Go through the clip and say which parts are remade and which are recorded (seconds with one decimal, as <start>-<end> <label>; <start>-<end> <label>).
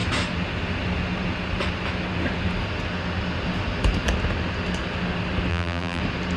0.0-5.5 recorded; 5.5-6.0 remade; 6.0-6.4 recorded